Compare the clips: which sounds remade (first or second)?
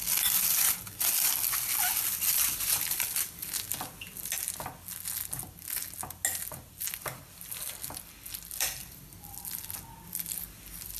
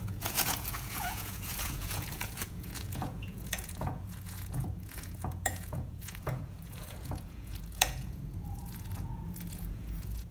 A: second